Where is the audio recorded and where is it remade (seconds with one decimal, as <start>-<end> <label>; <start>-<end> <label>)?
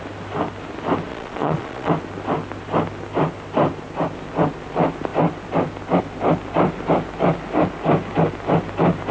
0.0-1.1 recorded; 1.1-1.9 remade; 1.9-9.1 recorded